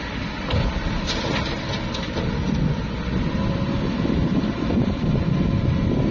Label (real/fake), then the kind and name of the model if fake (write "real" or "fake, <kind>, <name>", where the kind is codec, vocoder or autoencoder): real